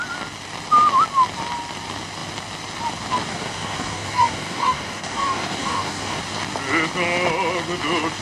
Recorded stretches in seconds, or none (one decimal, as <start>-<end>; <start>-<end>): 0.0-3.3; 6.2-8.2